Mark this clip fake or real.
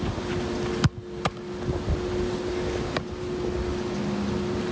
real